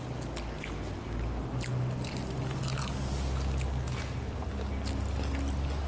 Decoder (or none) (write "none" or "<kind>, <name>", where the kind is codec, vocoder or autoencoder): none